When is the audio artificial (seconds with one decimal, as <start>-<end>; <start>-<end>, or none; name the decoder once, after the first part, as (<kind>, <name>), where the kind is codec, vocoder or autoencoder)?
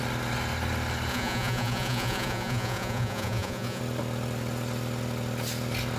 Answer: 1.1-3.8 (vocoder, Vocos)